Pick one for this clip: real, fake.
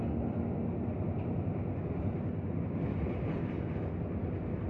real